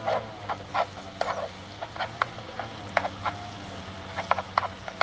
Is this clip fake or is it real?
real